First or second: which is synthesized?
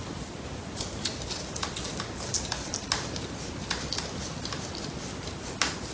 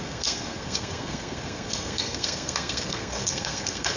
second